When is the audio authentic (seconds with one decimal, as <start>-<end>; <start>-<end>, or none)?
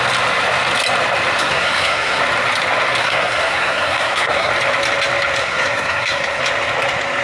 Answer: 0.0-1.4; 2.2-3.0; 4.5-5.4; 6.4-7.2